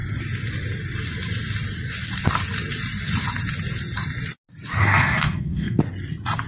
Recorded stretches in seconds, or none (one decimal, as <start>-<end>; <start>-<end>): 0.0-4.8; 5.8-6.5

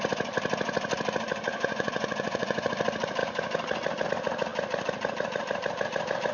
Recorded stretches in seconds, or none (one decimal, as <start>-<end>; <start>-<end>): 0.0-1.5; 2.7-6.3

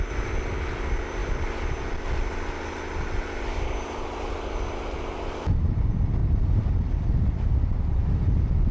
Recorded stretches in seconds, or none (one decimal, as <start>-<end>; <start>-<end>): 0.0-6.2; 7.9-8.7

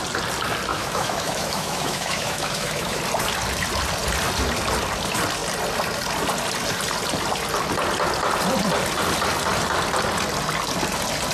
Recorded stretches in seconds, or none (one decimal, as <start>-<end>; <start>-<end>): 0.0-0.7; 3.0-11.3